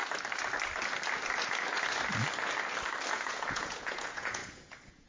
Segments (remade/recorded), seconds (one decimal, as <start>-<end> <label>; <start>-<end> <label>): 0.0-3.1 recorded; 3.1-5.1 remade